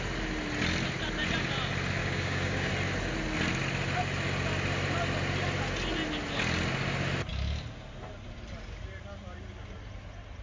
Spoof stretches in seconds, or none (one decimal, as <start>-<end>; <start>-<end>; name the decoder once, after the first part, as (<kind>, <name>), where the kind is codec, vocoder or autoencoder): 2.0-2.7 (codec, DAC)

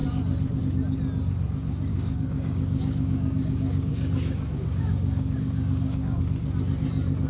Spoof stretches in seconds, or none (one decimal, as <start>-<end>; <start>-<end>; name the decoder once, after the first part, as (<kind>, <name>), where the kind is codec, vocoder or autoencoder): 1.9-6.2 (codec, DAC)

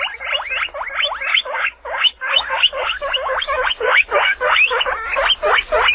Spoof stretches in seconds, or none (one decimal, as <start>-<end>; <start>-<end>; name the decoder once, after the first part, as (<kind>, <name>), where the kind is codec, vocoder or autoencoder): 1.3-4.8 (codec, DAC)

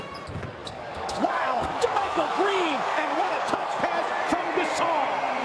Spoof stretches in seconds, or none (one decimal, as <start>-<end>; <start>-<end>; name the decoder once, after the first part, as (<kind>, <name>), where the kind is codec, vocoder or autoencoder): 0.6-3.8 (codec, DAC)

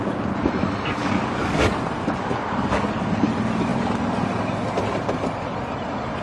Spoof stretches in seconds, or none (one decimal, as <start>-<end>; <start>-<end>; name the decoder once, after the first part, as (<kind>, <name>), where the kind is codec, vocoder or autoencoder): 1.0-1.6 (codec, DAC); 2.0-3.3